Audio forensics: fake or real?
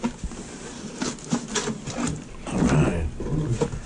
real